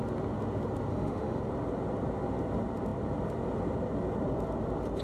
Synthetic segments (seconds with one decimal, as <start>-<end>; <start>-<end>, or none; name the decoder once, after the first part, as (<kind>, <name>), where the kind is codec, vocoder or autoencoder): 0.9-1.4 (autoencoder, DAC-VAE)